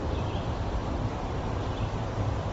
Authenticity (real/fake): fake